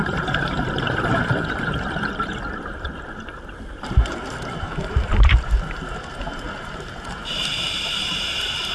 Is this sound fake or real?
fake